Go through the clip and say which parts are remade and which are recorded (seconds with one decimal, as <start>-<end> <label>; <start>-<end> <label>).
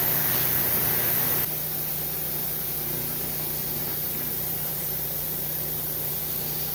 0.0-3.8 recorded; 3.8-6.2 remade; 6.2-6.7 recorded